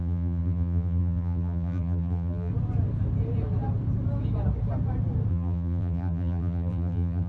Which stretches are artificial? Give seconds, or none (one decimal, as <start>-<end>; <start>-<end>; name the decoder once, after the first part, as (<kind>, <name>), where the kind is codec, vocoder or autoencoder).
0.0-2.5 (vocoder, BigVGAN v2); 5.3-7.3